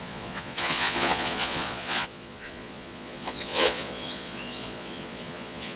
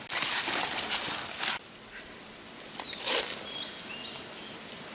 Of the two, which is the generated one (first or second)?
first